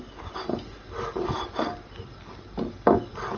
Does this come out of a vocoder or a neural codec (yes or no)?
no